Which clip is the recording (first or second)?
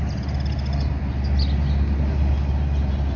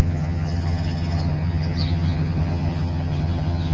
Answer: first